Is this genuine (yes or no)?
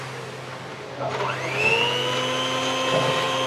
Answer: yes